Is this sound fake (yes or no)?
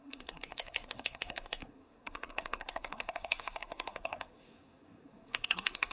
yes